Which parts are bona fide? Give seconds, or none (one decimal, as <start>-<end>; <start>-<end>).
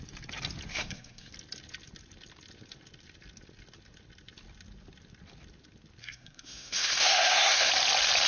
0.0-0.7; 1.3-6.0; 7.7-8.3